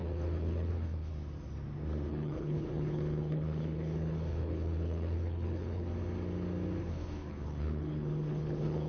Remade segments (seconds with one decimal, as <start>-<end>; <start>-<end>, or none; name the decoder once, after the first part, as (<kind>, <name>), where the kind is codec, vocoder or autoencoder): 0.0-1.1 (codec, HILCodec); 2.1-5.9; 6.8-8.9